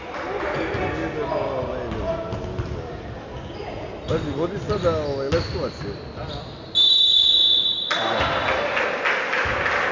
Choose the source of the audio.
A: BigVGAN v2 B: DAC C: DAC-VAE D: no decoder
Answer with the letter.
D